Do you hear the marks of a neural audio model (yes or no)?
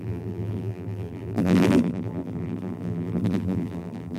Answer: yes